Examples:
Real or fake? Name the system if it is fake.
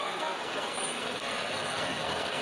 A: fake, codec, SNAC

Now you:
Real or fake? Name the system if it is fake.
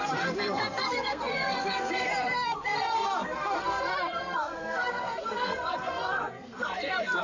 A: fake, codec, SNAC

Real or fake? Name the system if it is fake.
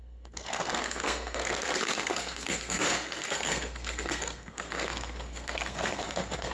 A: fake, codec, SNAC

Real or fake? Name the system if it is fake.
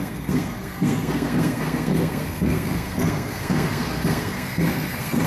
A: fake, codec, SNAC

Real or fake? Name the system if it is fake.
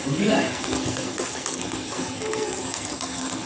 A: fake, codec, SNAC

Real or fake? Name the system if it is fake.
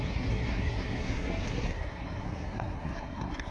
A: fake, codec, SNAC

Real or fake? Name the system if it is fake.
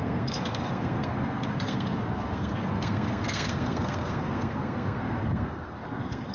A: fake, codec, SNAC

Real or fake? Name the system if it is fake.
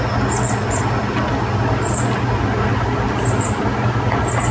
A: real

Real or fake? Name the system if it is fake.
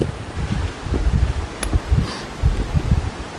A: real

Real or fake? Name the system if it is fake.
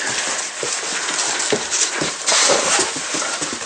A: real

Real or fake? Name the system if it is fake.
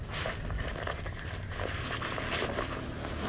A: real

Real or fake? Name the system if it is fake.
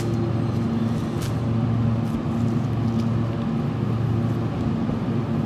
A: real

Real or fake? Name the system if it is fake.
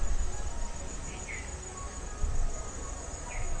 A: real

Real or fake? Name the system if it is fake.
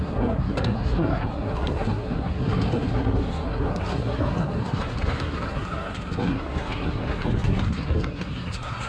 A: fake, codec, SNAC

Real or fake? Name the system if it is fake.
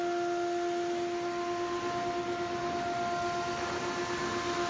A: real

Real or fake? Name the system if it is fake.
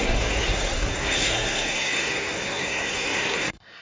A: fake, codec, SNAC